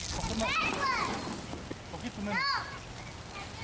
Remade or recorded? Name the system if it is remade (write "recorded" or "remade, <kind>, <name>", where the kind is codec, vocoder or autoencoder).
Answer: recorded